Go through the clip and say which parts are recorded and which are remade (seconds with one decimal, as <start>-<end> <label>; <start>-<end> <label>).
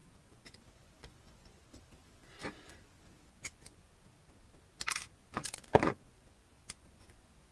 0.0-3.9 remade; 3.9-5.1 recorded; 5.1-7.5 remade